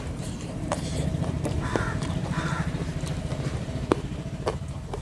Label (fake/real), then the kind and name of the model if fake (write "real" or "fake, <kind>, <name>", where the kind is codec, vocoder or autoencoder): fake, vocoder, BigVGAN v2